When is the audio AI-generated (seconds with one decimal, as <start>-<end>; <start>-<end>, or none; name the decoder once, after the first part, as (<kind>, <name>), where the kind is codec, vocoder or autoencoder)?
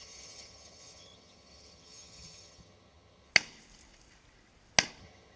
0.0-3.3 (vocoder, HiFi-GAN); 5.0-5.4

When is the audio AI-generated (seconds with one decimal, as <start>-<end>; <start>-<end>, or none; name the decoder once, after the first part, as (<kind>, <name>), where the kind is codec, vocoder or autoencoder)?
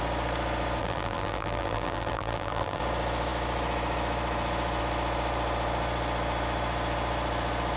0.8-2.8 (vocoder, BigVGAN v2)